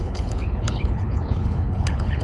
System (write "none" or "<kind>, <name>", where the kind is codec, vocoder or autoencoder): codec, HILCodec